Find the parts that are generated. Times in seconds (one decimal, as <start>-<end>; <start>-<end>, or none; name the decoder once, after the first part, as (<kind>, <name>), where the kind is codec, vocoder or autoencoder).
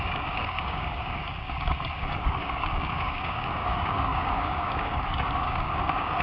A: 0.0-6.2 (codec, DAC)